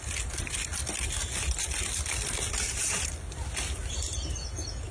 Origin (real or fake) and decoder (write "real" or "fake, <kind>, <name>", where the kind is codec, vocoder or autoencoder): real